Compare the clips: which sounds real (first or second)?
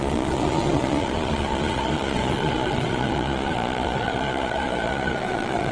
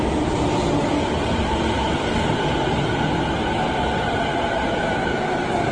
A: second